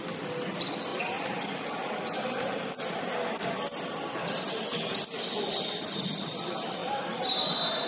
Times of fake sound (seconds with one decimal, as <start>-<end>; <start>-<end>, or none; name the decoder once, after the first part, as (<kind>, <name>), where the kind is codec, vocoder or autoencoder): 0.9-2.6 (vocoder, BigVGAN v2); 6.8-7.5